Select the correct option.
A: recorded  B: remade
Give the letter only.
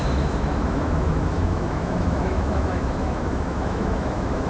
B